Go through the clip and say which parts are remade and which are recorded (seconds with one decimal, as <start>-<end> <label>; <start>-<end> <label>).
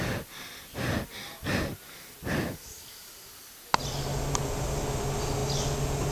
0.0-6.1 recorded